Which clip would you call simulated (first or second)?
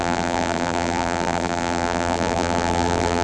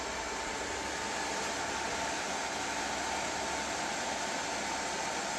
first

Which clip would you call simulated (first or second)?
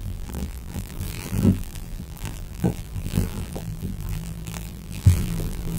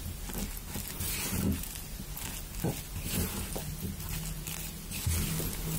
first